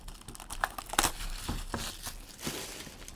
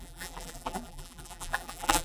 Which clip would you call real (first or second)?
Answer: first